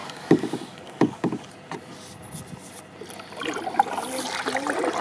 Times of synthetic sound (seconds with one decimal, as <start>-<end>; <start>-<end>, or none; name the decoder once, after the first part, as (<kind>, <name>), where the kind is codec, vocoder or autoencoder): 0.0-1.5 (codec, DAC)